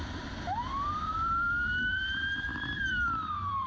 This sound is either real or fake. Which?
fake